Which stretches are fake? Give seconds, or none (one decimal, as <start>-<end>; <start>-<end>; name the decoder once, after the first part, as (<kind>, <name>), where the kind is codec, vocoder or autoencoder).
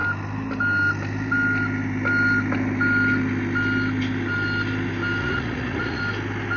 5.2-6.0 (vocoder, Vocos)